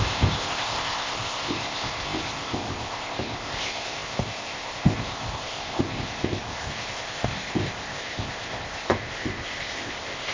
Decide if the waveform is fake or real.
fake